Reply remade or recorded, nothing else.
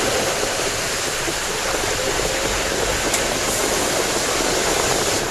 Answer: recorded